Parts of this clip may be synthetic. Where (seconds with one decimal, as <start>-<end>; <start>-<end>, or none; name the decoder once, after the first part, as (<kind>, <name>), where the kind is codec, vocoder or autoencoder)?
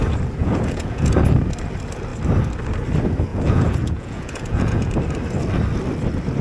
0.4-1.1 (vocoder, Vocos); 3.3-4.9